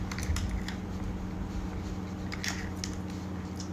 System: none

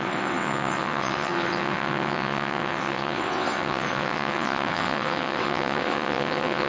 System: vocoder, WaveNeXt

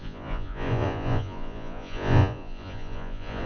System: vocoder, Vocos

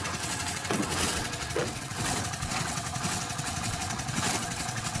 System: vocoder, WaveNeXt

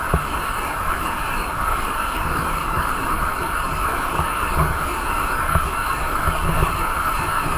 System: codec, DAC